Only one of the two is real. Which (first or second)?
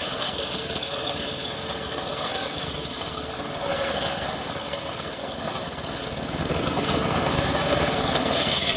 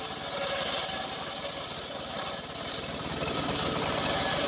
second